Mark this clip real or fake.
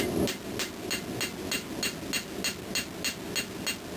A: real